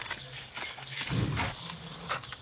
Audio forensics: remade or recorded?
remade